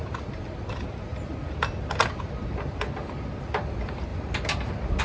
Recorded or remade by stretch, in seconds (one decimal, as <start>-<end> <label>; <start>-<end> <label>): 0.0-5.0 recorded